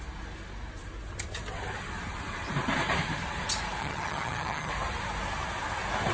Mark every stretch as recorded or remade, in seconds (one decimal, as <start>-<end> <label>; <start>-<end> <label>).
0.0-3.8 recorded; 3.8-4.7 remade; 4.7-6.1 recorded